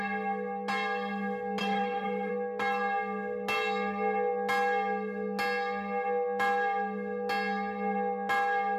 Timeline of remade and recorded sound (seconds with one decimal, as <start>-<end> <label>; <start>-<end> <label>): 0.0-1.6 recorded; 1.6-2.3 remade; 2.3-8.8 recorded